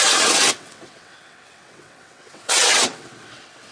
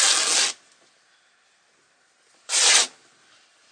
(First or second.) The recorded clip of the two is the second